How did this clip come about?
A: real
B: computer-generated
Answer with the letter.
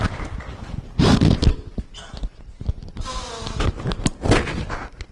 A